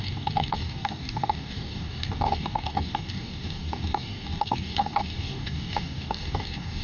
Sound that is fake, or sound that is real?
fake